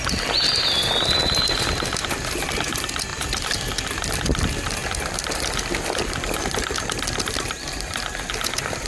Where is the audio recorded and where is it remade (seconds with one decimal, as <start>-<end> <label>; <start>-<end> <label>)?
0.0-8.9 recorded